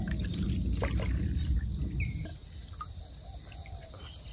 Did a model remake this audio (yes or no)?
no